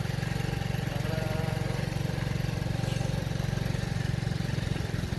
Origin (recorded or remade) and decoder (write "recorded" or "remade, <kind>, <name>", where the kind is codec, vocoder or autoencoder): recorded